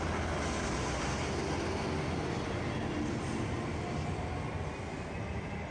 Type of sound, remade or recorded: recorded